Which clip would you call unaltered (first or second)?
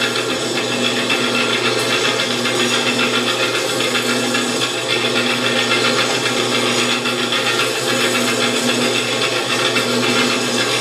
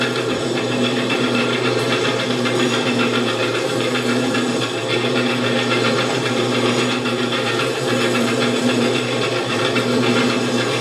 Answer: first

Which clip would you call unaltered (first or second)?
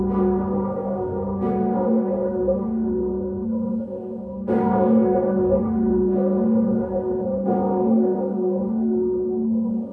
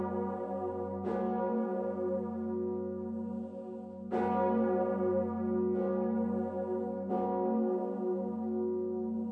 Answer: second